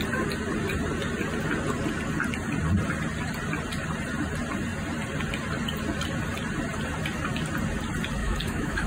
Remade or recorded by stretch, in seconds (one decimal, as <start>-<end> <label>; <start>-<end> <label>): 0.0-8.2 recorded; 8.2-8.9 remade